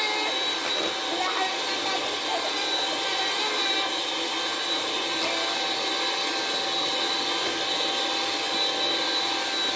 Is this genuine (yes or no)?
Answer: yes